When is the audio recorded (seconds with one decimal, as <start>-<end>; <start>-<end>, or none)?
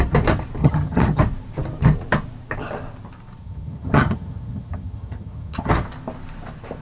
0.0-0.6; 1.2-3.4; 5.7-6.8